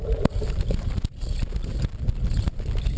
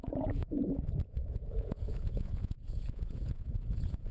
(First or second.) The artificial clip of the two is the second